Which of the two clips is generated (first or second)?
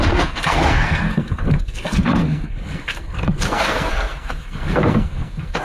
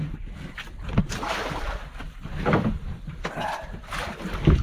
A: first